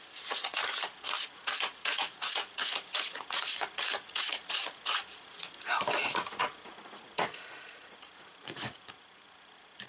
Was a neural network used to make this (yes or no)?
yes